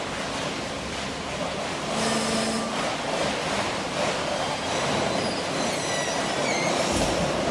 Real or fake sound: real